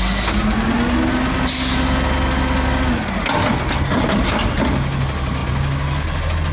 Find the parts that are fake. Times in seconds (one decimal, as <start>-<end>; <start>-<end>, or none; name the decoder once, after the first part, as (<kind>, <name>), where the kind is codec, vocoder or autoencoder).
none